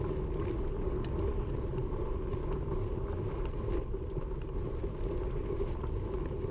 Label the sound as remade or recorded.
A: recorded